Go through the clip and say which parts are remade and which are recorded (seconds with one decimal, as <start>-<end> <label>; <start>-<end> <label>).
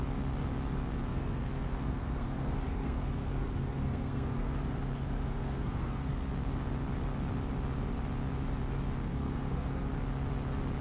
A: 0.0-1.1 recorded; 1.1-6.3 remade; 6.3-9.0 recorded; 9.0-9.9 remade; 9.9-10.8 recorded